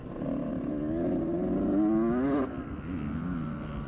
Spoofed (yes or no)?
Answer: no